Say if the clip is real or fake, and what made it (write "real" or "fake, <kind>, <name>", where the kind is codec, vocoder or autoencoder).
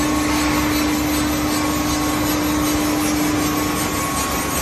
real